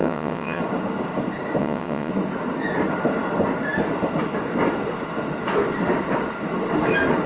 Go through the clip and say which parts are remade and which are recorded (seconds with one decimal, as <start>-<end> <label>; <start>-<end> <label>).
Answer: 0.0-0.6 remade; 0.6-1.6 recorded; 1.6-2.1 remade; 2.1-7.3 recorded